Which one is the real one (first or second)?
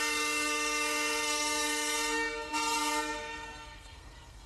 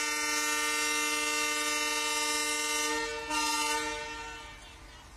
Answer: second